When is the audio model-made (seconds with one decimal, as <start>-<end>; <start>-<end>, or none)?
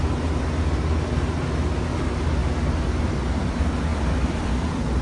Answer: 2.4-3.0; 3.9-4.5